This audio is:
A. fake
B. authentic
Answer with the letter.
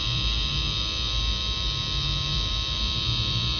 A